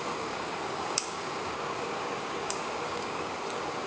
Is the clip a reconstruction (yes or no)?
yes